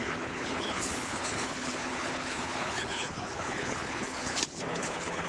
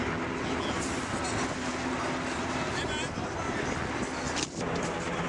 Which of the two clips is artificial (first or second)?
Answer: first